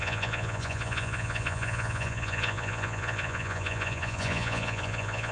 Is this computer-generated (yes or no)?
yes